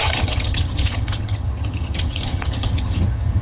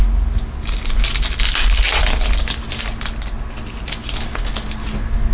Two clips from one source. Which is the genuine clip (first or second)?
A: second